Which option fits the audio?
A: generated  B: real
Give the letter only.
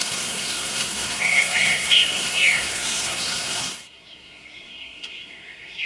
A